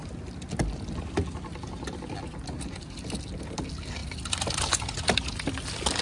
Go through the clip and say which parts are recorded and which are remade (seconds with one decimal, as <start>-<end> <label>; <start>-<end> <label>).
0.0-6.0 recorded